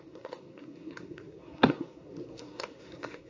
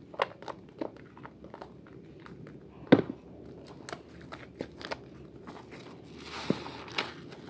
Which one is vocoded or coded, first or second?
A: first